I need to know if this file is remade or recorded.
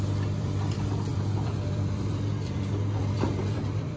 remade